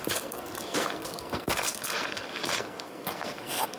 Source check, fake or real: fake